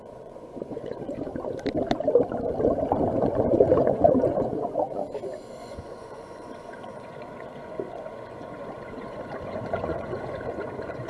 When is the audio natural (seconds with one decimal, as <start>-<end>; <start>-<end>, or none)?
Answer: 1.3-3.2; 5.0-5.6